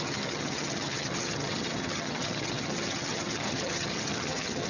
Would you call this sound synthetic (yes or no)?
yes